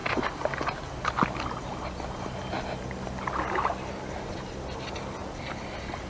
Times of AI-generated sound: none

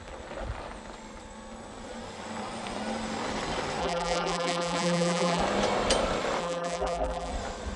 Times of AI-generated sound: 3.8-5.4 (vocoder, BigVGAN v2); 6.4-7.3

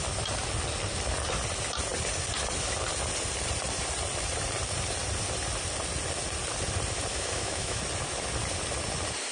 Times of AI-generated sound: 7.1-7.8 (autoencoder, DAC-VAE)

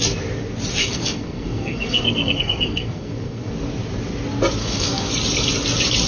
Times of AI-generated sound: 0.8-3.5 (codec, SNAC); 4.6-5.1

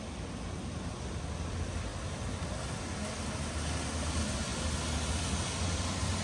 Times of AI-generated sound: none

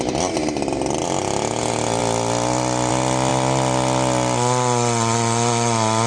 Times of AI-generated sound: none

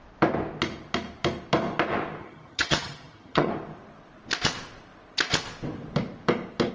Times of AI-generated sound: 2.2-3.5 (vocoder, HiFi-GAN)